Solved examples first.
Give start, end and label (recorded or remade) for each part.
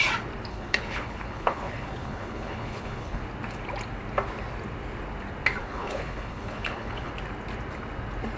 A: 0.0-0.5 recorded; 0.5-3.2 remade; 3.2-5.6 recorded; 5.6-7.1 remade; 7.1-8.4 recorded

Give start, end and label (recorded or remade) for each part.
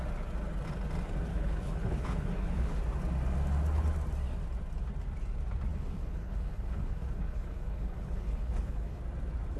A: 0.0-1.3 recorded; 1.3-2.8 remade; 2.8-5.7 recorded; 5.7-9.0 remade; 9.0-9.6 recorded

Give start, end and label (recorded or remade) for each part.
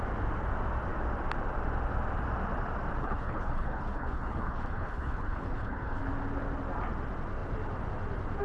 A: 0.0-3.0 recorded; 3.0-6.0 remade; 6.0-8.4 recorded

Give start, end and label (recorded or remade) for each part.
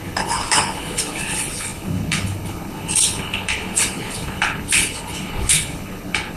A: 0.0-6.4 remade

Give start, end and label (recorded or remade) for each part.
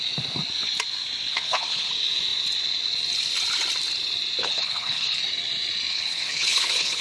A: 0.0-1.3 recorded; 1.3-1.9 remade; 1.9-4.4 recorded; 4.4-5.2 remade; 5.2-5.9 recorded; 5.9-7.0 remade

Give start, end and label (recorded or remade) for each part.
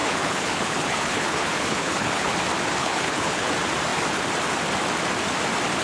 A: 0.0-2.3 remade; 2.3-2.8 recorded; 2.8-3.5 remade; 3.5-5.8 recorded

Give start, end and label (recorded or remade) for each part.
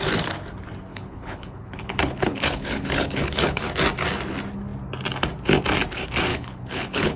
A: 0.0-0.9 recorded; 0.9-3.6 remade; 3.6-6.3 recorded; 6.3-7.2 remade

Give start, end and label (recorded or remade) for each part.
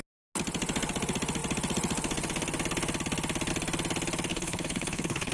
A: 0.0-4.3 recorded; 4.3-5.3 remade